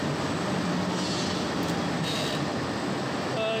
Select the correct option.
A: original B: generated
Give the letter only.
A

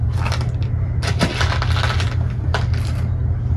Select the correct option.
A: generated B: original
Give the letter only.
B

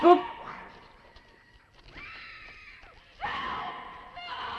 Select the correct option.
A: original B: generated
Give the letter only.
A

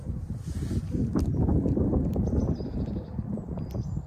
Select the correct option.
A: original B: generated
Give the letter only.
A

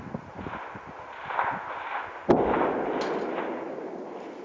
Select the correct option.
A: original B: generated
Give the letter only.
A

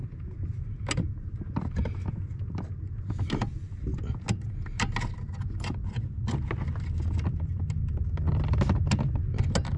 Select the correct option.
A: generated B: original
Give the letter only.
B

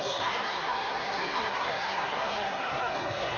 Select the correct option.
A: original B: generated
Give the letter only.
B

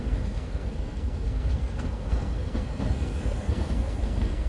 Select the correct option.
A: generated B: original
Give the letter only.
A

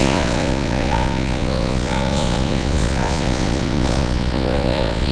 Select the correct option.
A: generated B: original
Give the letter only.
A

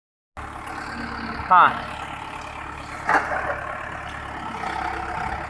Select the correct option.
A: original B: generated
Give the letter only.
A